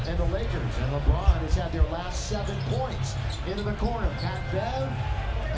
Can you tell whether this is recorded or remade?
recorded